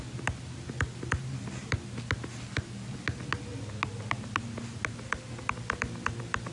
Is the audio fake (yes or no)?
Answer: no